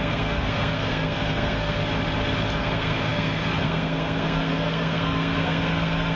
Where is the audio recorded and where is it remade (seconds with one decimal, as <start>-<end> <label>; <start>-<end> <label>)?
0.0-1.8 remade; 1.8-2.6 recorded; 2.6-6.2 remade